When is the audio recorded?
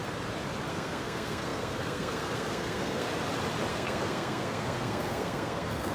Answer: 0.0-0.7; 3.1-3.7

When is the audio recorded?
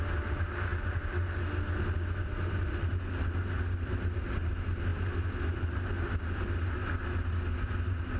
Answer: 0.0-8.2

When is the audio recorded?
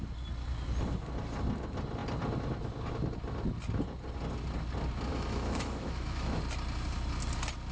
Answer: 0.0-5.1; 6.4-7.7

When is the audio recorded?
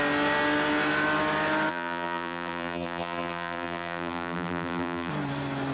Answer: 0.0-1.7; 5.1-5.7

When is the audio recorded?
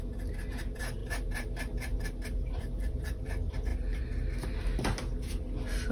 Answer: 3.7-5.9